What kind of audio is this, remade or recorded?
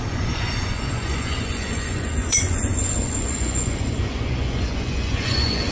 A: remade